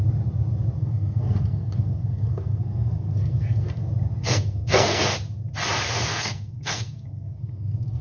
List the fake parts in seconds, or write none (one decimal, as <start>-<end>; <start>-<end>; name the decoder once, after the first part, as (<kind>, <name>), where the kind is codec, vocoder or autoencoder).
0.8-3.8 (codec, SNAC); 4.2-5.0; 6.1-8.0

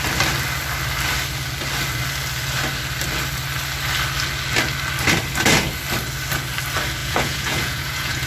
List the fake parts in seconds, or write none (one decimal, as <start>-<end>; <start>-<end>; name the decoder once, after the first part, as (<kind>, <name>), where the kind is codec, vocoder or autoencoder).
7.0-8.3 (vocoder, Vocos)

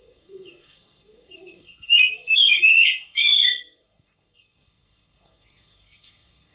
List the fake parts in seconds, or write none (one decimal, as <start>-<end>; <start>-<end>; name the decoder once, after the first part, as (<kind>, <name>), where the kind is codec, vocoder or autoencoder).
0.0-6.5 (codec, SNAC)

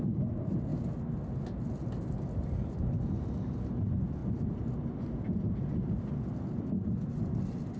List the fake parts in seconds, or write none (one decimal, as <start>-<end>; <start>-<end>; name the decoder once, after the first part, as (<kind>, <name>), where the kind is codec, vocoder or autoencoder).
none

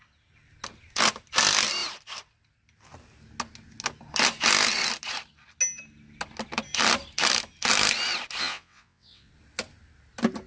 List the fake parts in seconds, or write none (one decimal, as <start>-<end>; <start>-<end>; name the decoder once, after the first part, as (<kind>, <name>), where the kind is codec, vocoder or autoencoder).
8.4-9.3 (vocoder, WaveNeXt)

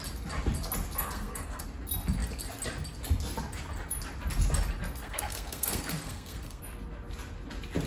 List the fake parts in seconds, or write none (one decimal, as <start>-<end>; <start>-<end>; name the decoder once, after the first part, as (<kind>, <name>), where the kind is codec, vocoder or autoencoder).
1.0-1.6 (codec, SNAC); 5.0-6.6

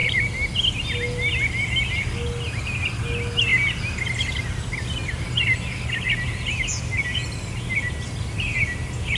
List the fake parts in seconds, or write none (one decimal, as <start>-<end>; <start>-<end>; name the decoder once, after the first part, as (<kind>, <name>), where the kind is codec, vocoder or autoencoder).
none

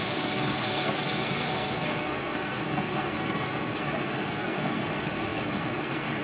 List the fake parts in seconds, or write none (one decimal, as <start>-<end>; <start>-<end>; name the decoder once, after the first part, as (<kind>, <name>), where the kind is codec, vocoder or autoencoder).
0.0-6.2 (codec, SNAC)